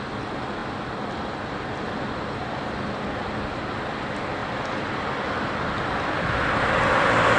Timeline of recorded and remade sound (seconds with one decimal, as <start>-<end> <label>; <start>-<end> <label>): 0.0-7.4 recorded